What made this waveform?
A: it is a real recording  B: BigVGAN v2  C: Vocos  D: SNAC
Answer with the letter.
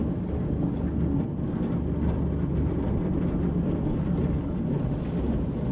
A